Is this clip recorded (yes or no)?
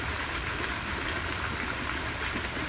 yes